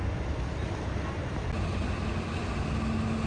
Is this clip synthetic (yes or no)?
no